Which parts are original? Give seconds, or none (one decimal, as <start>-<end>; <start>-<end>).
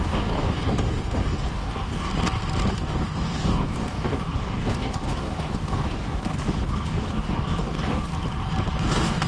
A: 2.1-2.7; 8.1-8.8